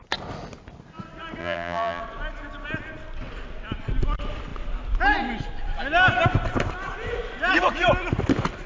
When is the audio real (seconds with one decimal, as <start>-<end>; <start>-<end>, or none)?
0.0-1.4; 2.0-8.7